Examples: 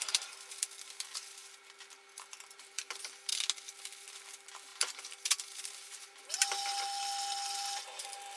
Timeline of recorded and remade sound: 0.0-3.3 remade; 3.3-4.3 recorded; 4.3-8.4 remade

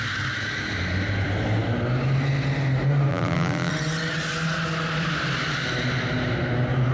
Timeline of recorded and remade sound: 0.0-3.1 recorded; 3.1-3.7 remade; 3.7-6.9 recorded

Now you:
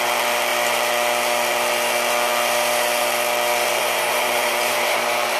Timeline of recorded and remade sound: 0.0-3.7 recorded; 3.7-5.4 remade

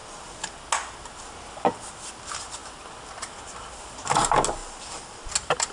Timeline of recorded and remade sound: 0.0-4.6 recorded; 4.6-5.3 remade; 5.3-5.7 recorded